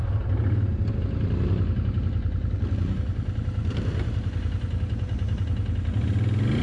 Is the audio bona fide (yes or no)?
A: yes